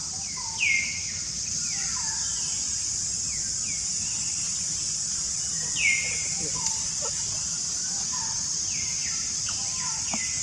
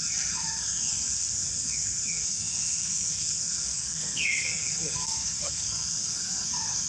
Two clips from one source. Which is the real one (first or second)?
first